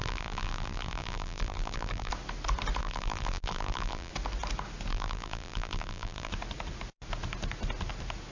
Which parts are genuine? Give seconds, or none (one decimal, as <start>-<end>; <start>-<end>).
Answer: 2.1-2.8; 4.1-4.9; 6.3-8.3